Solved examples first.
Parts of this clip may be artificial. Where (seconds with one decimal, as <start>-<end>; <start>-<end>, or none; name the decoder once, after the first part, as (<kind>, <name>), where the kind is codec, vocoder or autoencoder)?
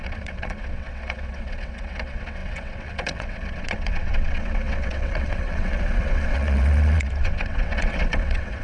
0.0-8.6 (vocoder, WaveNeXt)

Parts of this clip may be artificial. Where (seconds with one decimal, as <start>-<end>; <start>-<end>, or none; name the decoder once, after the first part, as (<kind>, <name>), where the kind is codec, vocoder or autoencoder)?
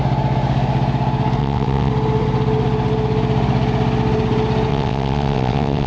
1.4-1.9 (vocoder, WaveNeXt); 4.7-5.9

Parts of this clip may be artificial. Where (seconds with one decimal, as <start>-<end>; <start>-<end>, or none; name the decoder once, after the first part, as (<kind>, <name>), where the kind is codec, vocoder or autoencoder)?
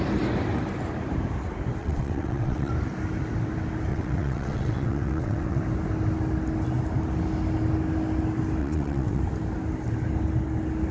1.8-2.7 (vocoder, WaveNeXt); 3.9-5.6; 8.6-9.2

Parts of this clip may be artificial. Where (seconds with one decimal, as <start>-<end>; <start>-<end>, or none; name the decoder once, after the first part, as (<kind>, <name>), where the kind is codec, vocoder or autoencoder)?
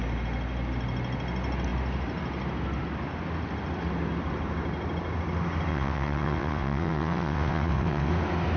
5.7-8.1 (vocoder, WaveNeXt)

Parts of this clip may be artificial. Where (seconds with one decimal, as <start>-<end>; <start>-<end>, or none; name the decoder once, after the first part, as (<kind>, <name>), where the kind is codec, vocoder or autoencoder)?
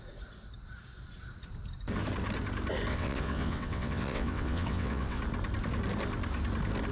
2.9-5.2 (vocoder, WaveNeXt)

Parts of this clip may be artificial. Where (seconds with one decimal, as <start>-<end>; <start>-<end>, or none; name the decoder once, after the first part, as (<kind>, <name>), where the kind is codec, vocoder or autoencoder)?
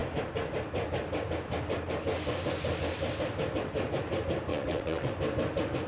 4.5-5.1 (vocoder, WaveNeXt)